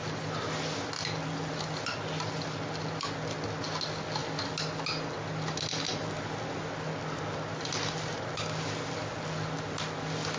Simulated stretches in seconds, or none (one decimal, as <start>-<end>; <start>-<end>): none

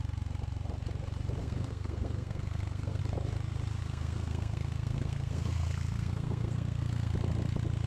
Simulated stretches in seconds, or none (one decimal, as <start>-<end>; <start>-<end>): 1.4-3.0; 3.8-7.1

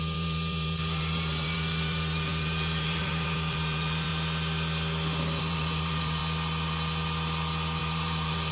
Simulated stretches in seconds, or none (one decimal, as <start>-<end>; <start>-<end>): 0.0-4.1; 5.4-6.2; 7.8-8.5